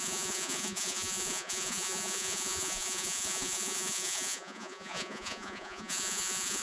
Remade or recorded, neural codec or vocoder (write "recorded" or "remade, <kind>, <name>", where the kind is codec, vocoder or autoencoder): remade, vocoder, Vocos